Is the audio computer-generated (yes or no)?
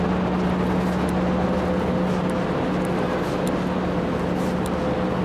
no